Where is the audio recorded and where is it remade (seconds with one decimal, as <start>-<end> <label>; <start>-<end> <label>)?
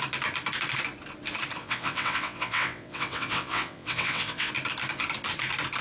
0.0-1.6 recorded; 1.6-4.5 remade; 4.5-5.8 recorded